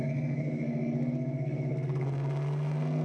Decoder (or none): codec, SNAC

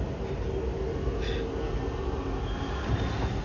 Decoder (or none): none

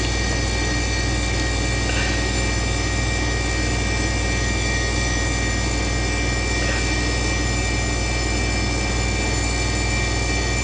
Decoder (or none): none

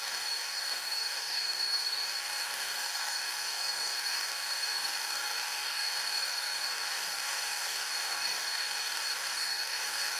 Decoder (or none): codec, DAC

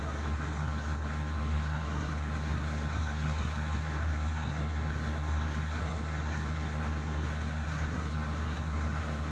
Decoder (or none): codec, SNAC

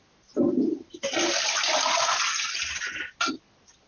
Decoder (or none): none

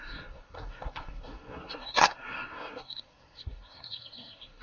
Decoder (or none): codec, SNAC